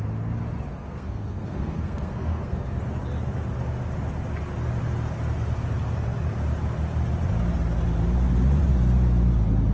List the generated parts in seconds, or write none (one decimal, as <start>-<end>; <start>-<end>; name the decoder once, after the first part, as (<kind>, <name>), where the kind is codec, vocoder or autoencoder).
0.7-2.8 (codec, SNAC)